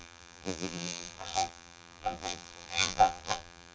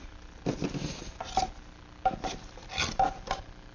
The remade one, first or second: first